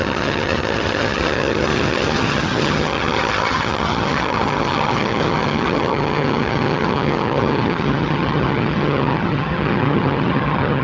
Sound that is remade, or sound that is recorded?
remade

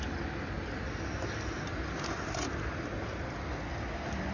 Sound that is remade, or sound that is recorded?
recorded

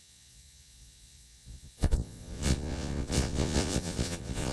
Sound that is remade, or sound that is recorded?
remade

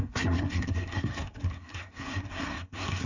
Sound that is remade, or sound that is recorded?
remade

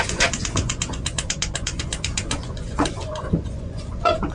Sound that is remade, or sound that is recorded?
remade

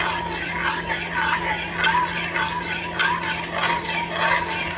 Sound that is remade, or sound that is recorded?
recorded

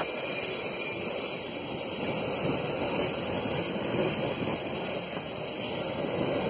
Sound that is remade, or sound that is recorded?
recorded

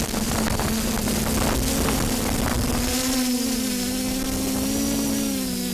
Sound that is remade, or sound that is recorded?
recorded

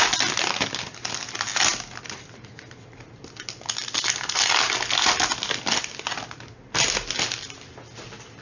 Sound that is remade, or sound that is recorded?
recorded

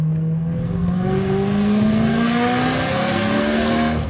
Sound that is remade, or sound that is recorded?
remade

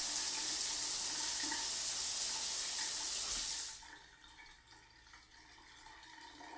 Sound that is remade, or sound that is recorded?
recorded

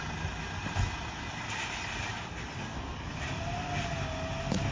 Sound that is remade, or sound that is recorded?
recorded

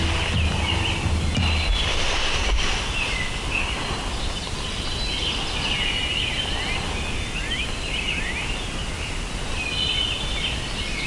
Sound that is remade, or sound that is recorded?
recorded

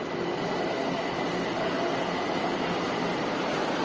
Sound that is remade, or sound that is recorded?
recorded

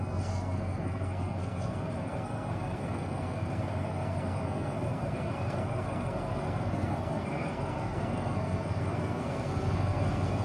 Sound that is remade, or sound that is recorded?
remade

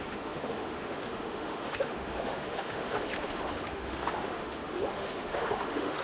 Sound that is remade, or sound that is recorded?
remade